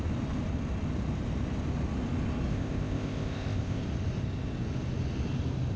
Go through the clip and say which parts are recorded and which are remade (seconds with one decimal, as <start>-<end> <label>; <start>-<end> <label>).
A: 0.0-2.5 recorded; 2.5-3.8 remade; 3.8-5.8 recorded